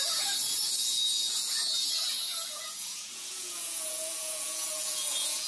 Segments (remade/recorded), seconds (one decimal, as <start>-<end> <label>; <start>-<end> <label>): 0.0-5.5 remade